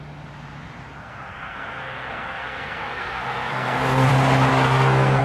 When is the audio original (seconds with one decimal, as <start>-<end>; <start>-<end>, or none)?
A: 0.0-1.0; 4.1-4.5